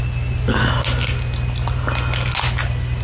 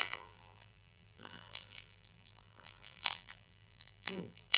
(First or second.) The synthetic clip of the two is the second